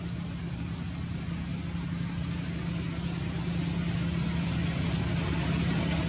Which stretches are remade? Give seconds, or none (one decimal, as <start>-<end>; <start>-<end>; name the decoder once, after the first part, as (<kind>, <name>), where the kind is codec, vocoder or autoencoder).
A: none